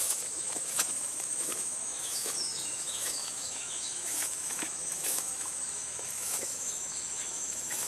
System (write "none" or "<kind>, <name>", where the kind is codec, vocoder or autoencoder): autoencoder, DAC-VAE